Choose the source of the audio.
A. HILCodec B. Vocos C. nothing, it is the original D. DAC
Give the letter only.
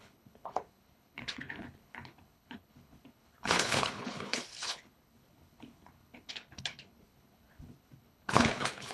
A